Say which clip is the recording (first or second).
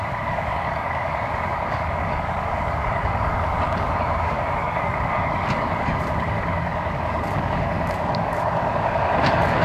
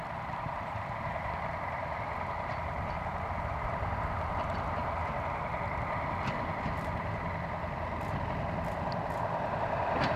second